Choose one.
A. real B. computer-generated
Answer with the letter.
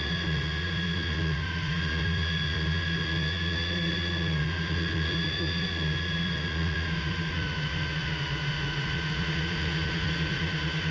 B